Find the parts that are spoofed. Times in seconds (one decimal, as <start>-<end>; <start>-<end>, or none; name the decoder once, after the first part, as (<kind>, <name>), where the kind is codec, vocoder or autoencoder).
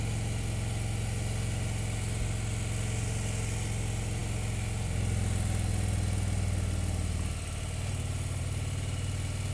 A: none